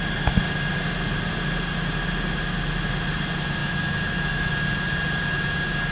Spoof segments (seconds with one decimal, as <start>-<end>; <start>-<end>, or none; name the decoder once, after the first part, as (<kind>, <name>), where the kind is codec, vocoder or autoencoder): 3.6-4.5 (autoencoder, DAC-VAE)